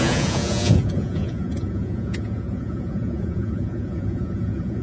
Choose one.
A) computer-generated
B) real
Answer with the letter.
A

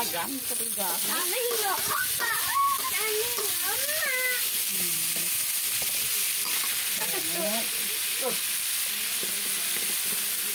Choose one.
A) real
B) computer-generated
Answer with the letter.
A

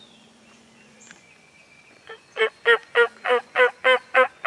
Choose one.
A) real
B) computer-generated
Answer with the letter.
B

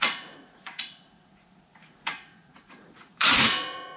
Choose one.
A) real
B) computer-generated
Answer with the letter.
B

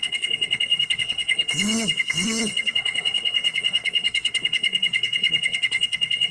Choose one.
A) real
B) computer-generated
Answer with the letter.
B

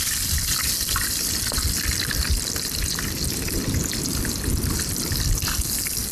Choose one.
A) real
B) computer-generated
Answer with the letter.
A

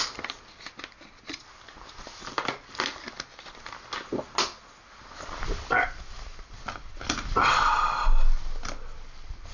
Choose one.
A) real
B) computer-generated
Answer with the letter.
A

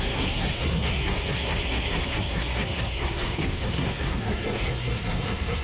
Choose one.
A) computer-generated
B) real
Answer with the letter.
A